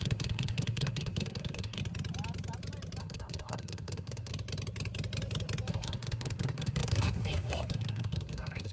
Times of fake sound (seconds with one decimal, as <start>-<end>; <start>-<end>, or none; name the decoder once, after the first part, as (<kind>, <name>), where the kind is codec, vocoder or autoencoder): 0.0-1.8 (codec, SNAC); 3.0-4.3; 5.7-8.7